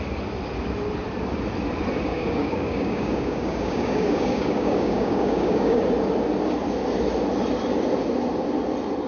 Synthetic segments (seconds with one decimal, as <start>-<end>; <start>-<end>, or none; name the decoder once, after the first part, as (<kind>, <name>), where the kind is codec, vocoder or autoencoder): 2.1-5.8 (codec, DAC)